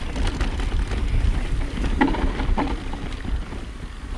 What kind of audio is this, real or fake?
fake